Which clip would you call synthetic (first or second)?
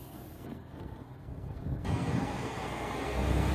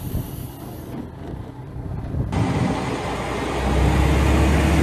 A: first